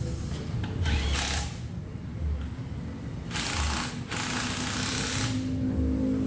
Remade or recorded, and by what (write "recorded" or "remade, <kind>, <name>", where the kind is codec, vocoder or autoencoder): recorded